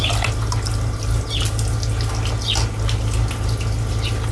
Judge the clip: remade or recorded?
recorded